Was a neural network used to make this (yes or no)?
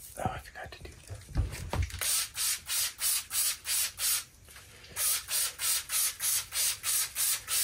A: no